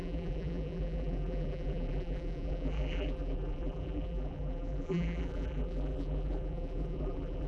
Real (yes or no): no